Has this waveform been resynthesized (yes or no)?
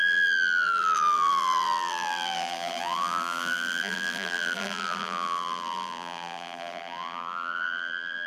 yes